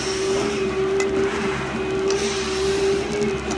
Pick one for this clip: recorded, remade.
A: recorded